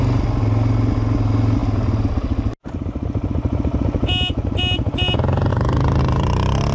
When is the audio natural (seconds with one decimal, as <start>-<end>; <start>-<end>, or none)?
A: 0.0-5.5; 6.0-6.7